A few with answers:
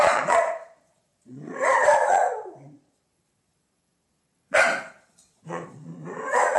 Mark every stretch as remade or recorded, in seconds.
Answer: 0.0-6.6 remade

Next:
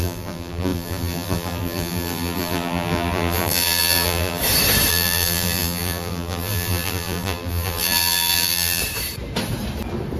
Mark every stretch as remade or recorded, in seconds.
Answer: 0.0-4.4 remade; 4.4-4.9 recorded; 4.9-8.8 remade; 8.8-10.2 recorded